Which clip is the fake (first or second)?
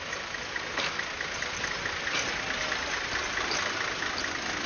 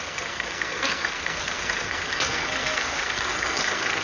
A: second